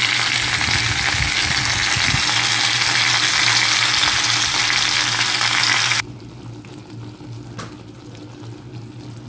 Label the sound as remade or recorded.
recorded